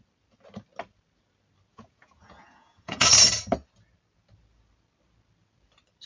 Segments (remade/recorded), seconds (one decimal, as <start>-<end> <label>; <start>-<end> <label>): 0.0-1.7 recorded; 1.7-3.1 remade; 3.1-6.1 recorded